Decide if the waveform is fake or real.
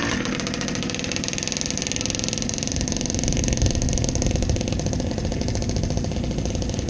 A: real